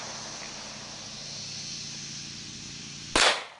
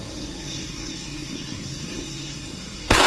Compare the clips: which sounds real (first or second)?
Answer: first